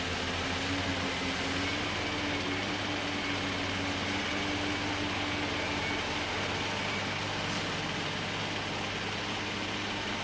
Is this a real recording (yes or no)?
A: yes